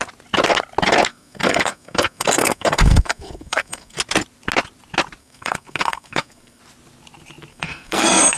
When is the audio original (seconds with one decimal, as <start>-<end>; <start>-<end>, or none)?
0.0-1.1; 4.0-5.2; 6.6-7.5